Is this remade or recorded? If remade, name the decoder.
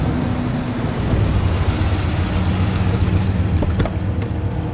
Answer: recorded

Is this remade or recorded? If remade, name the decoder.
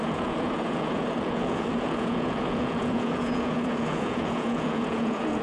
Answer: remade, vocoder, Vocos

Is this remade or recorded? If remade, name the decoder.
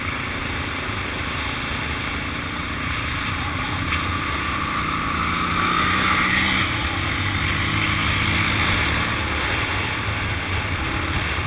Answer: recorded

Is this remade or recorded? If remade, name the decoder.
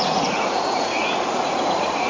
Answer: remade, vocoder, Vocos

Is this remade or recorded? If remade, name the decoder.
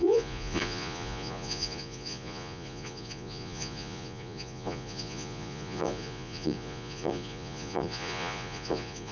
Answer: remade, vocoder, Vocos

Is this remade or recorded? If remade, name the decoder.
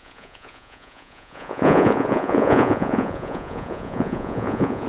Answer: remade, vocoder, Vocos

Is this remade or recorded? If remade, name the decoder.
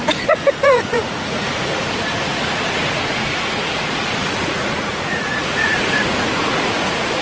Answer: remade, vocoder, Vocos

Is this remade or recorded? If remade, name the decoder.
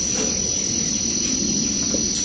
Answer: recorded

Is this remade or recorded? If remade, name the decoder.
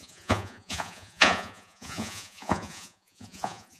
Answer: remade, vocoder, Vocos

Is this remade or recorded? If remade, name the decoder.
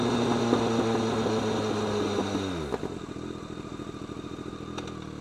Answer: recorded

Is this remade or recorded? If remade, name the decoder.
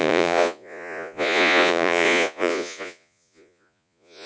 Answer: remade, vocoder, Vocos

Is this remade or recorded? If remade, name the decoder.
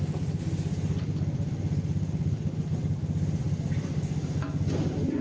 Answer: recorded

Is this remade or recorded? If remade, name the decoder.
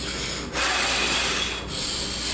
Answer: recorded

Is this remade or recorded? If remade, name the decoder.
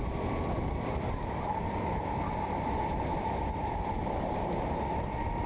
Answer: recorded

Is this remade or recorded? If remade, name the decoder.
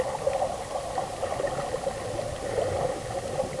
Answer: recorded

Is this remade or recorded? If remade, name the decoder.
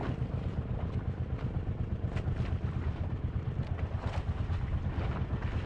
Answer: recorded